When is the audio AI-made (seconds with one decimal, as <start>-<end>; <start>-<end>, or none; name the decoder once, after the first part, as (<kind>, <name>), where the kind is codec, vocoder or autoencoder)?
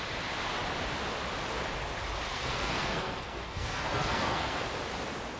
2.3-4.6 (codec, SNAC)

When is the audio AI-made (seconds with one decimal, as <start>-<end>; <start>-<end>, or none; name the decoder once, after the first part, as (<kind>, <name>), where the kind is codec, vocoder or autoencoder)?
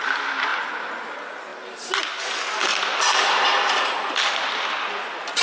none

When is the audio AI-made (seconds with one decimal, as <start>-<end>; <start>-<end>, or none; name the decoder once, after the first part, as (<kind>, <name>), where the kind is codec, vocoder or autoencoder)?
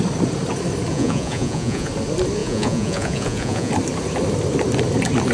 0.9-1.9 (vocoder, Vocos); 2.4-3.7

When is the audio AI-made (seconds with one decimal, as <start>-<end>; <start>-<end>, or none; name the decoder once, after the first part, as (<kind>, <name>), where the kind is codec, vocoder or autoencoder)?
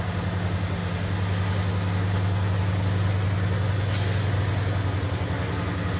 none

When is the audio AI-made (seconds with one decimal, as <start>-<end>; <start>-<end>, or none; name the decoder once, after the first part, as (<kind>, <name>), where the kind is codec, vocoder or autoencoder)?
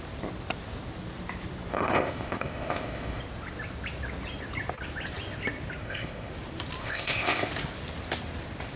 1.7-3.2 (codec, ZipCodec); 5.8-6.3; 6.8-7.5